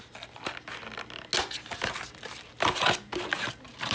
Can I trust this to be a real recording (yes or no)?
yes